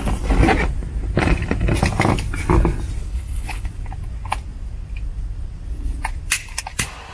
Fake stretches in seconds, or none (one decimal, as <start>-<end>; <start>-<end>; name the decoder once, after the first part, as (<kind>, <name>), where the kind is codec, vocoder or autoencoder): 3.0-3.7 (codec, HILCodec)